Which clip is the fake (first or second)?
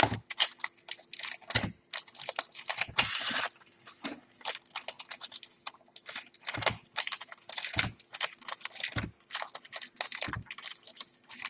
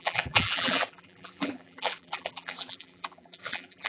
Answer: second